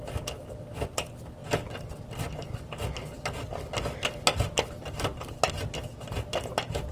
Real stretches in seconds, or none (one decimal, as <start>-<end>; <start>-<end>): 0.0-6.9